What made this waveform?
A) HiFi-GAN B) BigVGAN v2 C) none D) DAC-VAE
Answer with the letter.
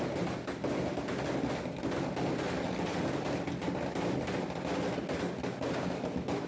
C